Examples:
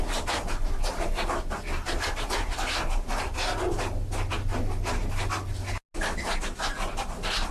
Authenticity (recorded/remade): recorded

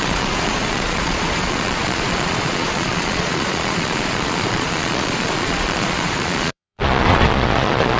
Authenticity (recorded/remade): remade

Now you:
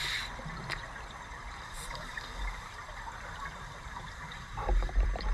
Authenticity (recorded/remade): remade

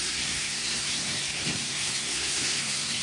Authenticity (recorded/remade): remade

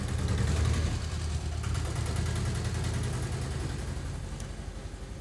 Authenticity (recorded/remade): recorded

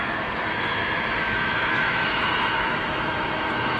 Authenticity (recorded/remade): remade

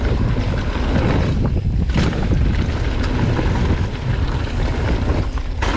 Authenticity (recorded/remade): recorded